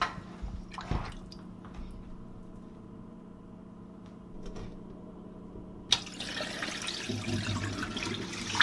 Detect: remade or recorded recorded